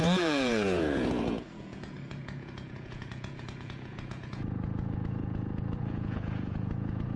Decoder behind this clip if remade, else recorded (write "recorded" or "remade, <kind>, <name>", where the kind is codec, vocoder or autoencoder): remade, vocoder, Vocos